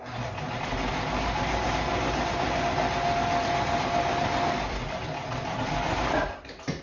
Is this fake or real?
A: real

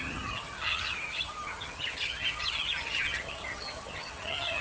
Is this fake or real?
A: fake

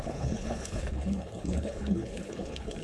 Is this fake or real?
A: fake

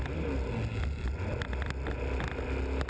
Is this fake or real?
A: real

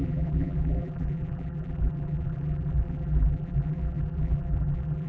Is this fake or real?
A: fake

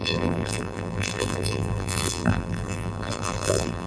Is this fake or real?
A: fake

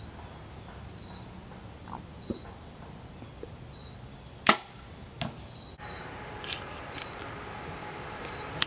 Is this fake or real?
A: real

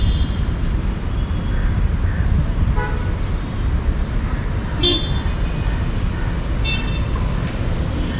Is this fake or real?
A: real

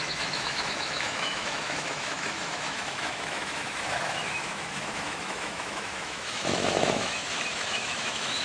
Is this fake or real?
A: fake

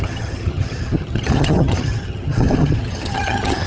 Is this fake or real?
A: fake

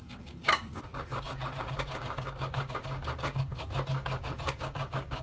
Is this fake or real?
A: fake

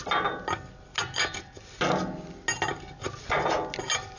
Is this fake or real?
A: real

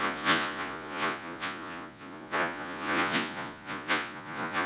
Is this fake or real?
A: fake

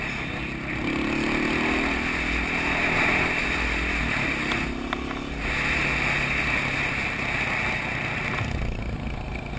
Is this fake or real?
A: real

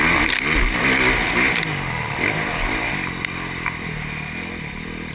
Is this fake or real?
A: real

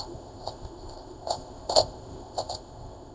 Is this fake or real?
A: fake